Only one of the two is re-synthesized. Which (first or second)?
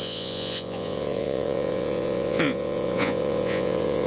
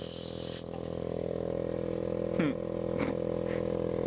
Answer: first